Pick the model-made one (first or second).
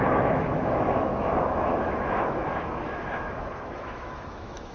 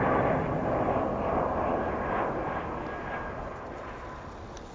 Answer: first